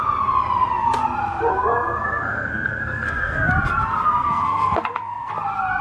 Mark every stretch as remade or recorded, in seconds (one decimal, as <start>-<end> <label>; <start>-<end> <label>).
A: 0.0-1.5 recorded; 1.5-3.5 remade; 3.5-4.2 recorded; 4.2-5.3 remade; 5.3-5.8 recorded